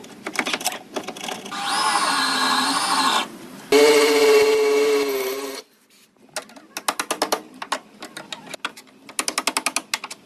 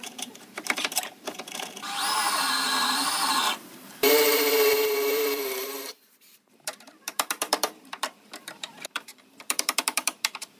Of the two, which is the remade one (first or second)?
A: second